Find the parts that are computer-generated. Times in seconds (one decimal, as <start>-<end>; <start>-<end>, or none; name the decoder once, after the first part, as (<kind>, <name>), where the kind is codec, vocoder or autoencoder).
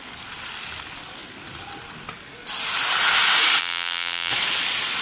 3.6-4.3 (vocoder, BigVGAN v2)